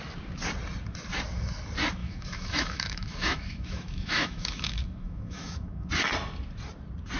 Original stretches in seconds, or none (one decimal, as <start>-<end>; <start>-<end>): 0.0-2.0; 5.9-7.2